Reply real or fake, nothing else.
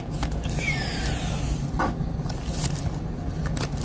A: real